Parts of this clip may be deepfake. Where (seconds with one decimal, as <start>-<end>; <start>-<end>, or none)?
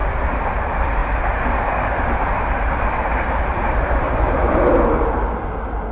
none